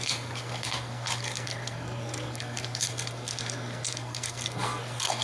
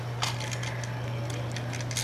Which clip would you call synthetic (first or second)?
first